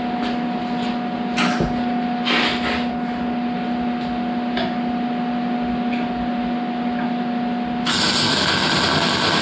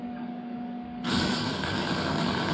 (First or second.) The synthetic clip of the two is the second